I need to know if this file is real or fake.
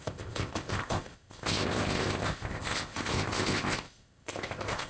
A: fake